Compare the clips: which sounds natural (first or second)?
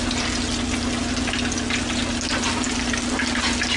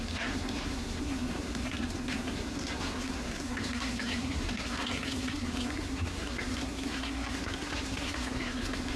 first